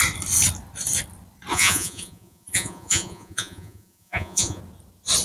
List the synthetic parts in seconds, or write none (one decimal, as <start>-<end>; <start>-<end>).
1.5-4.6